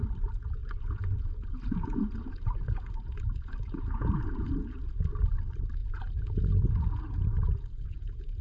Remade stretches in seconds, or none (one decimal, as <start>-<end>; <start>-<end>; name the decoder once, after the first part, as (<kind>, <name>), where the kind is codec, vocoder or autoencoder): 0.6-4.9 (vocoder, Vocos); 5.8-8.4